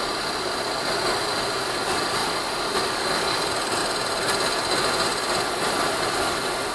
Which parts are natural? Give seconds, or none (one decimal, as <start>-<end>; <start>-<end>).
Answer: 0.0-6.7